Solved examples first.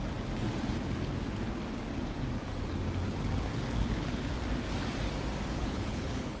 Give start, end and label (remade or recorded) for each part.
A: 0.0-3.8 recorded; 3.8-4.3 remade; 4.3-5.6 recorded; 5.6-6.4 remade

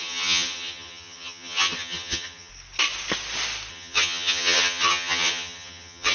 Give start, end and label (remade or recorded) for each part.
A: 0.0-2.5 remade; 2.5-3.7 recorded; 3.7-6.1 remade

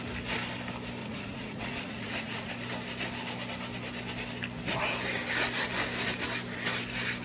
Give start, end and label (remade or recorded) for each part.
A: 0.0-1.0 recorded; 1.0-2.5 remade; 2.5-7.2 recorded